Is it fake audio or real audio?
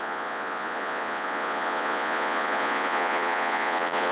fake